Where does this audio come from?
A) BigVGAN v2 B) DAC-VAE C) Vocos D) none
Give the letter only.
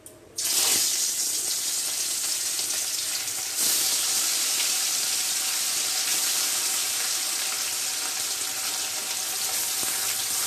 D